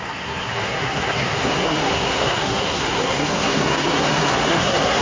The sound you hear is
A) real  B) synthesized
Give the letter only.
B